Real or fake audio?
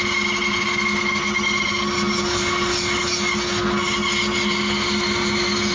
real